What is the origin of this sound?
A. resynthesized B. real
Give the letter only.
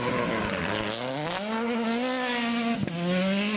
B